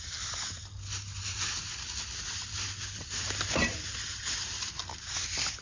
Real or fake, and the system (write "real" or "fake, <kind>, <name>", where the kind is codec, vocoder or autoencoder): real